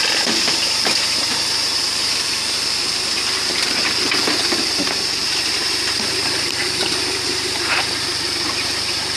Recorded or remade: remade